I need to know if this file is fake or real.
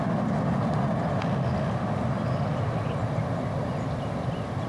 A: real